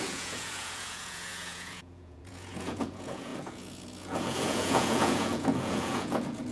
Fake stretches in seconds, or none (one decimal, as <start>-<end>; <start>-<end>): 0.0-6.5